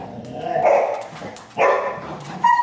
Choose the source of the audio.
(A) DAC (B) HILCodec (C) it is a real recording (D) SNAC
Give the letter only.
C